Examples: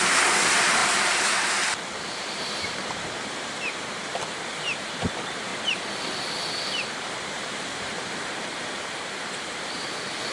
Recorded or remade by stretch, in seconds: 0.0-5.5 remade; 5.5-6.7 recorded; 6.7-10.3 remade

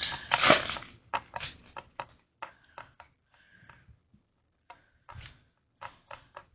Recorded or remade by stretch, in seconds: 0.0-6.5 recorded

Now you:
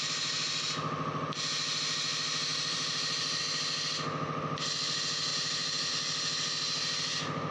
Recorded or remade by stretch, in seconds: 0.0-2.5 recorded; 2.5-3.4 remade; 3.4-5.3 recorded; 5.3-5.9 remade; 5.9-7.5 recorded

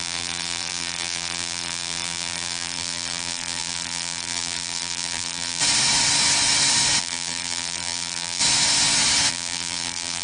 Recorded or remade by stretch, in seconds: 0.0-5.6 remade; 5.6-7.0 recorded; 7.0-8.4 remade; 8.4-9.3 recorded; 9.3-10.2 remade

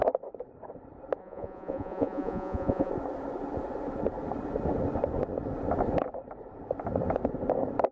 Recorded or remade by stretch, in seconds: 0.0-1.2 recorded; 1.2-2.9 remade; 2.9-7.9 recorded

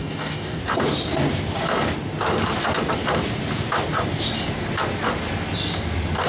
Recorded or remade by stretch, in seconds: 0.0-0.6 remade; 0.6-6.3 recorded